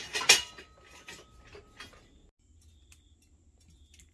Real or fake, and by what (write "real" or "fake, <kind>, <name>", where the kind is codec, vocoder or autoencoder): real